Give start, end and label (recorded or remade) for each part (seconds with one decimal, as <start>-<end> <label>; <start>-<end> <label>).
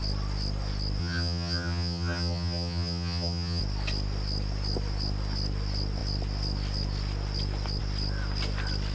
0.0-1.0 recorded; 1.0-3.6 remade; 3.6-8.9 recorded